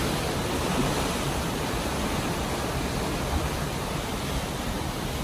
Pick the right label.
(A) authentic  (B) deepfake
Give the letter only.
B